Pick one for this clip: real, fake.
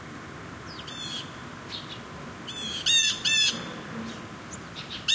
real